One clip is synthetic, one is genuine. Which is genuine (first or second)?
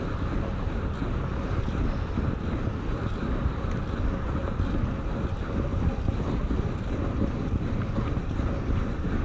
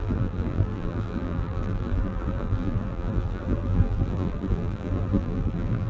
first